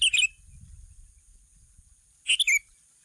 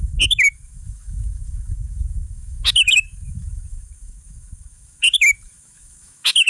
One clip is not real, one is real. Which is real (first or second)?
first